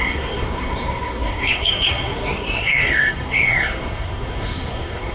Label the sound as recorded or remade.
remade